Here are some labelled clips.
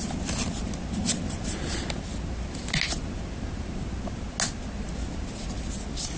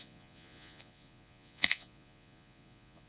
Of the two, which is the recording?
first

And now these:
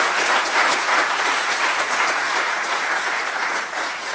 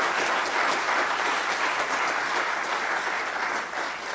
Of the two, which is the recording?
second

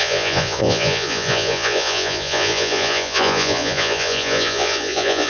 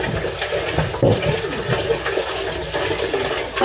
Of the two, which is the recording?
second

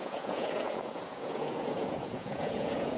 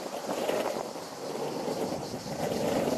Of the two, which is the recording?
second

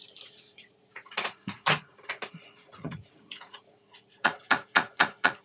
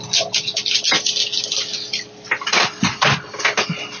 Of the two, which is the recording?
second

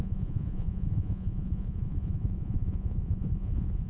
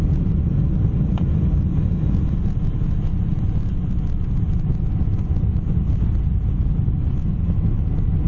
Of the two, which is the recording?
second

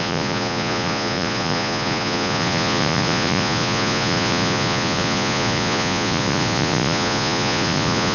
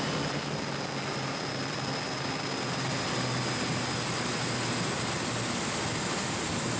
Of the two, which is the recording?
second